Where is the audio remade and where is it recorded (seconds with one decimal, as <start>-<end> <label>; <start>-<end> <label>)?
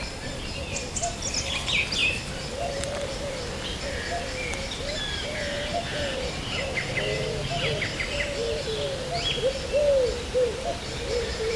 0.0-11.6 recorded